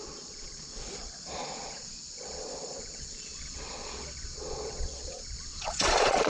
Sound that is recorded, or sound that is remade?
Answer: remade